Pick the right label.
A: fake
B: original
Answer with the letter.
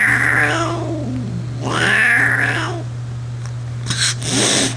B